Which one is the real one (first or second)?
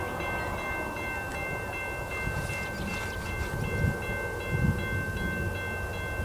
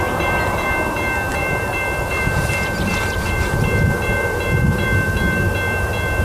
first